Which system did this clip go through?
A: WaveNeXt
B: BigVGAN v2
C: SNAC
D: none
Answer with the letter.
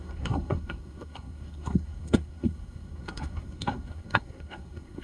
C